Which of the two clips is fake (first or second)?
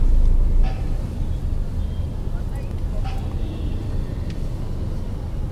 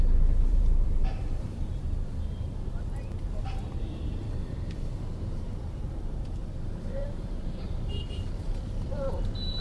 second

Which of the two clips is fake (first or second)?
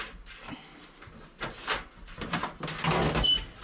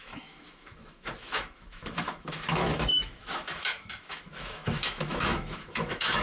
second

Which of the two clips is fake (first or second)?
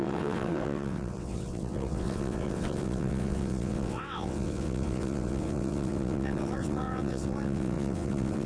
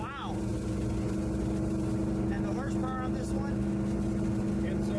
first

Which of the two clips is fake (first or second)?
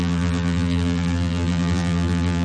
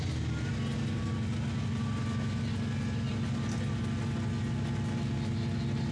first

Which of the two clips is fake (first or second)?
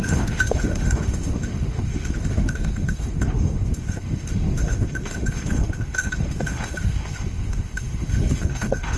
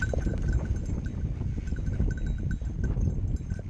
first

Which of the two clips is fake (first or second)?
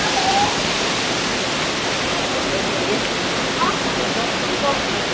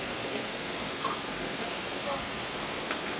second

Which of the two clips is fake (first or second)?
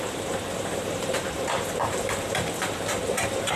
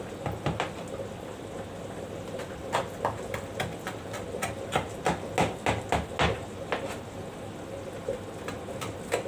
first